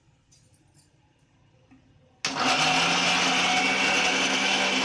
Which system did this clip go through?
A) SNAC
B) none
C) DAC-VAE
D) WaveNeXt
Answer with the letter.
B